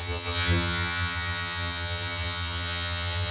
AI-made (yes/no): yes